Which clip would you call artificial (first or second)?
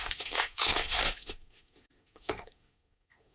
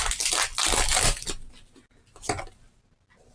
first